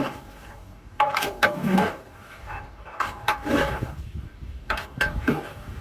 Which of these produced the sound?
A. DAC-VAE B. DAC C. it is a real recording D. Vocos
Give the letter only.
B